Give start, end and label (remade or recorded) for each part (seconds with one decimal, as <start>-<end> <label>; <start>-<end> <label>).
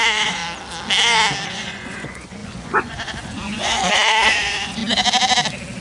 0.0-0.4 remade; 0.4-1.5 recorded; 1.5-4.8 remade; 4.8-5.8 recorded